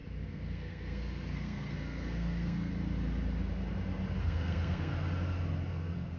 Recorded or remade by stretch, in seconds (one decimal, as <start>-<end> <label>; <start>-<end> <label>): 0.0-2.7 remade; 2.7-4.2 recorded; 4.2-4.9 remade; 4.9-5.7 recorded; 5.7-6.2 remade

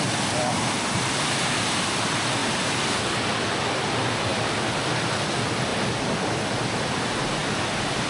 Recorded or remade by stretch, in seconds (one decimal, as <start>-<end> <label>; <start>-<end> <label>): 0.0-8.1 recorded

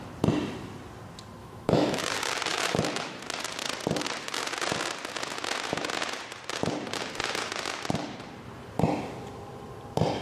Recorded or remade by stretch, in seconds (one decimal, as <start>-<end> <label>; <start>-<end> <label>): 0.0-1.4 recorded; 1.4-2.0 remade; 2.0-2.5 recorded; 2.5-3.2 remade; 3.2-10.2 recorded

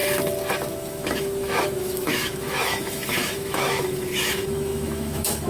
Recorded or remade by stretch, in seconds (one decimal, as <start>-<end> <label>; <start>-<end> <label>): 0.0-0.7 recorded; 0.7-5.5 remade